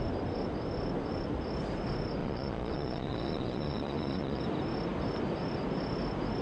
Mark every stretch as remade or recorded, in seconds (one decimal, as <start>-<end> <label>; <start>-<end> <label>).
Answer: 0.0-2.2 recorded; 2.2-4.4 remade; 4.4-6.4 recorded

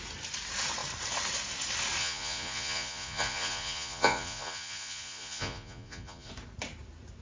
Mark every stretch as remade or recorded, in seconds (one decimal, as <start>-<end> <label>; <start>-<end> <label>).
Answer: 0.0-2.0 recorded; 2.0-6.3 remade; 6.3-7.2 recorded